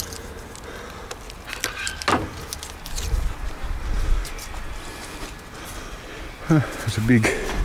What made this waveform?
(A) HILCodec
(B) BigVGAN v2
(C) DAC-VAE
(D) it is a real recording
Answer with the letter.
D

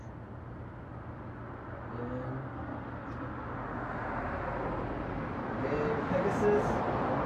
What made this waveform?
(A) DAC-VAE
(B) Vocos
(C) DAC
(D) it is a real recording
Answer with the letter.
D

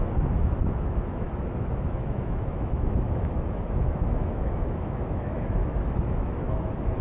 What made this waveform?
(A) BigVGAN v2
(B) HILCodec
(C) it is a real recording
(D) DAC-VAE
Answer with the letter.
D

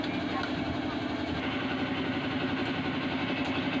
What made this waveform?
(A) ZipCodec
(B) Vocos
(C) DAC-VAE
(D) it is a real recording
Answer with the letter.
D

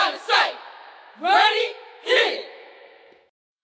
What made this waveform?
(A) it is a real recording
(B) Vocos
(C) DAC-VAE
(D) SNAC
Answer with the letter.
C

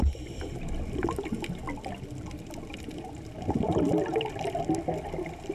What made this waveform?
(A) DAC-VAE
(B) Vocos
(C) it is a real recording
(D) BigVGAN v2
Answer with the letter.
C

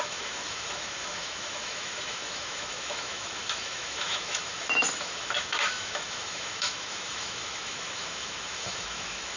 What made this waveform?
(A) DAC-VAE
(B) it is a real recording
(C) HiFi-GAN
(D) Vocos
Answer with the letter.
A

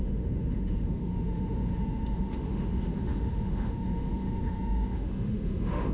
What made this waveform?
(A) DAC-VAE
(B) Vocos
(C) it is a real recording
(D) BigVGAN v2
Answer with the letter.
A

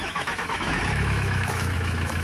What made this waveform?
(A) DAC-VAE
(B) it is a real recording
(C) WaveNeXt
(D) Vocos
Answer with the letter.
A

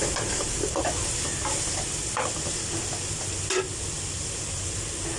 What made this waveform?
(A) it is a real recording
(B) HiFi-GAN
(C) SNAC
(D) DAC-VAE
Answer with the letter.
A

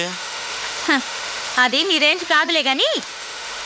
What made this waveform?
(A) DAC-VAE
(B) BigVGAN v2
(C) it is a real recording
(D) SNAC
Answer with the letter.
A